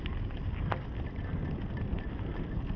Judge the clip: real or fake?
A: real